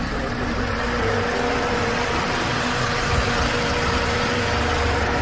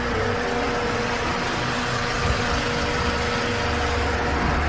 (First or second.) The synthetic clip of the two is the first